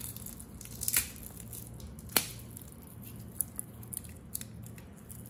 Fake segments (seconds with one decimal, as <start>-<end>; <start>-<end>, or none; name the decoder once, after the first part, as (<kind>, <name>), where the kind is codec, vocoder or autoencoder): none